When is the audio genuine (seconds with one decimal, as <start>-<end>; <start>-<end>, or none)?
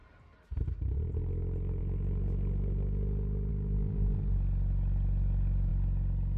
1.3-6.4